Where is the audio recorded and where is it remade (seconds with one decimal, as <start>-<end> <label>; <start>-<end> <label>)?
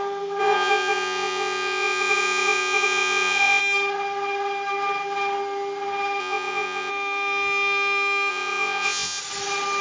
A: 0.0-0.4 recorded; 0.4-3.6 remade; 3.6-6.2 recorded; 6.2-6.9 remade; 6.9-8.3 recorded; 8.3-9.2 remade; 9.2-9.8 recorded